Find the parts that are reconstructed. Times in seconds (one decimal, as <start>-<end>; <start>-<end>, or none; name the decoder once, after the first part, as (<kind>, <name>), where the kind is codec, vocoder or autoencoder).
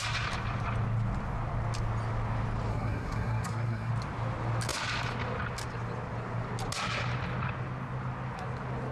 2.7-3.9 (codec, SNAC)